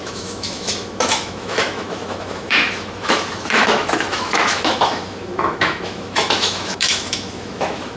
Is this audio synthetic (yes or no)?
yes